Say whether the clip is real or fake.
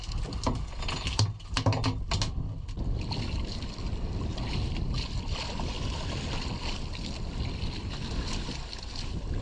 real